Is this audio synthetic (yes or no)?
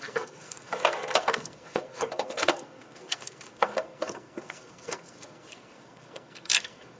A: yes